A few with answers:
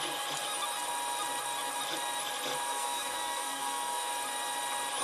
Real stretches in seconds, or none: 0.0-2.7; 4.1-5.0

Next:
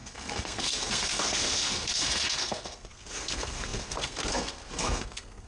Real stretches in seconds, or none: none

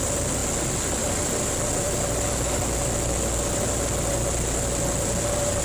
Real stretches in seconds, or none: 0.0-5.6